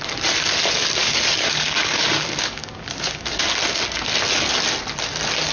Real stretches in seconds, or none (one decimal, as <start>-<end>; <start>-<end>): 0.0-1.0; 3.4-5.5